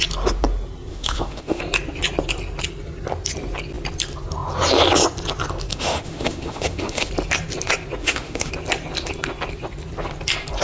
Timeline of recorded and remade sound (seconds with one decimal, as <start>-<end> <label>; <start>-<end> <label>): 0.0-0.9 recorded; 0.9-1.6 remade; 1.6-5.7 recorded; 5.7-7.1 remade; 7.1-8.0 recorded; 8.0-8.5 remade; 8.5-10.6 recorded